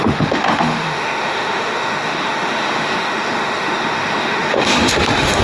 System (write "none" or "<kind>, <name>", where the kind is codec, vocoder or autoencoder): autoencoder, DAC-VAE